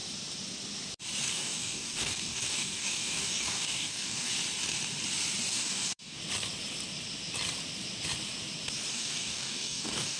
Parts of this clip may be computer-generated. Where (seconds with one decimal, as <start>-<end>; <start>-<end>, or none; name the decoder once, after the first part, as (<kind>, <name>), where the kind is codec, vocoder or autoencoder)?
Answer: 1.3-4.3 (codec, DAC); 5.5-6.2; 8.9-10.2